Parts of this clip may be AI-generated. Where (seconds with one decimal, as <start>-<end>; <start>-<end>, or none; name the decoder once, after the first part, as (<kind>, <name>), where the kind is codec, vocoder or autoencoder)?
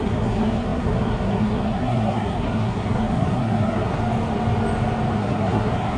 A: 0.0-4.0 (codec, SNAC); 5.2-6.0